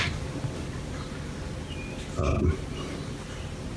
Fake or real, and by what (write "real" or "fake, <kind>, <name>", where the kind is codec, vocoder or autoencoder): real